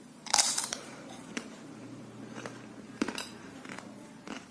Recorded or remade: remade